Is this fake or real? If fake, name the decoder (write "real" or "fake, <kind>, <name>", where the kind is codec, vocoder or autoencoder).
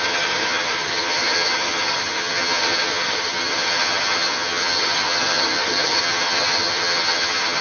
fake, vocoder, HiFi-GAN